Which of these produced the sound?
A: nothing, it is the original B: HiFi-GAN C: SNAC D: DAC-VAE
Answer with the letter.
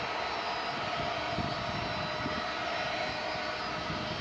A